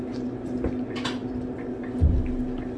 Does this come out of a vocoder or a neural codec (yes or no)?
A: no